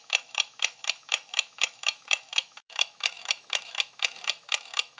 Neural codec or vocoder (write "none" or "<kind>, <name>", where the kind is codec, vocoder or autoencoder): autoencoder, DAC-VAE